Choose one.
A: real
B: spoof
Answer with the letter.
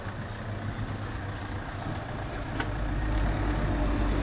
A